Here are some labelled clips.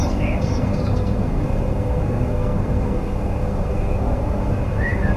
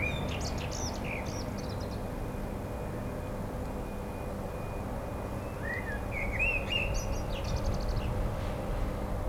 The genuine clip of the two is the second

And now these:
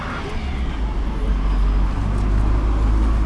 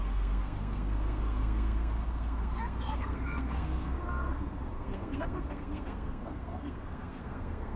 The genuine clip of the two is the first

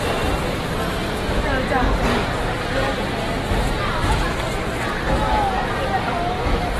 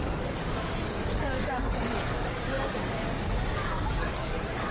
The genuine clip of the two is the first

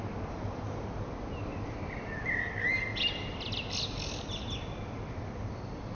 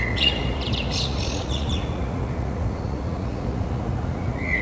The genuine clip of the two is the first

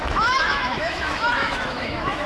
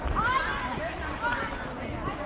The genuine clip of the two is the second